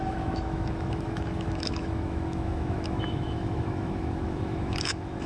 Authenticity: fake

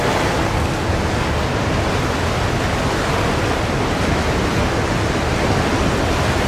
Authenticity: real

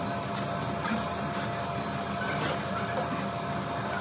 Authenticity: real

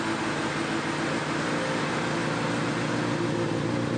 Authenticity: real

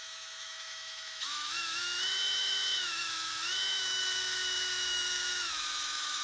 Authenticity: fake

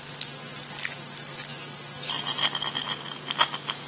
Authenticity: real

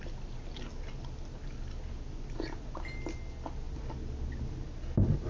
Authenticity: real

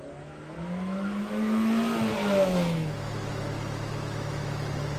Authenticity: fake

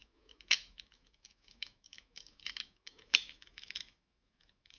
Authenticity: fake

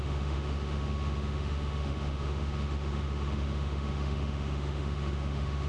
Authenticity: fake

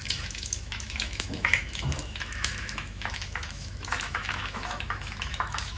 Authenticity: fake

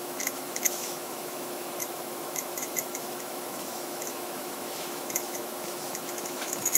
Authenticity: fake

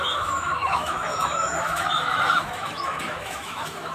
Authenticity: fake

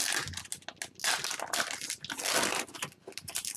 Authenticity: real